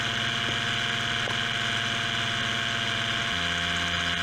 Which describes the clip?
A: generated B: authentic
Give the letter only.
B